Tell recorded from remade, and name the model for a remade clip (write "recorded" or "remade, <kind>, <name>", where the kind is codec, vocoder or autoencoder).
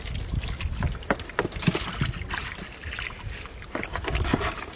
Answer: recorded